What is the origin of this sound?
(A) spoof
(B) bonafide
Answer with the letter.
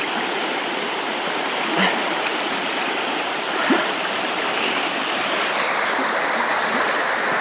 A